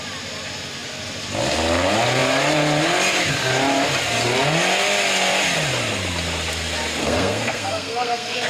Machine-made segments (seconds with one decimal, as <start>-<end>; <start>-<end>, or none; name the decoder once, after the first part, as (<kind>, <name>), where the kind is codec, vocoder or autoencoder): 7.0-8.5 (codec, SNAC)